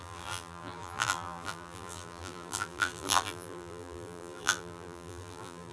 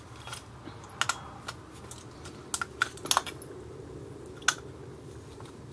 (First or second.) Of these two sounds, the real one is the second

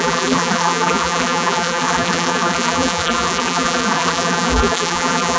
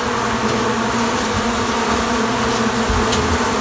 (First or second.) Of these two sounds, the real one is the second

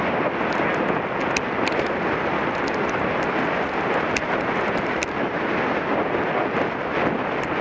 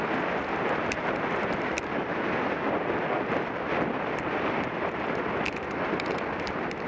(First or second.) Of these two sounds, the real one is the first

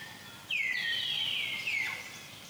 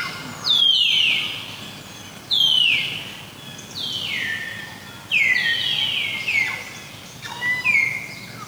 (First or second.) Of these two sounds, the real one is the second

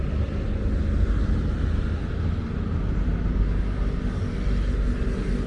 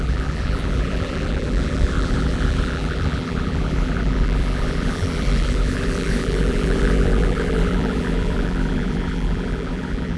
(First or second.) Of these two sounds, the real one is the first